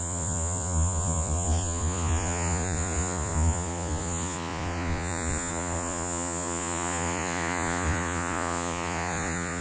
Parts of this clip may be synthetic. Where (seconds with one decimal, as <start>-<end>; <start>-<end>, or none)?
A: 0.0-9.6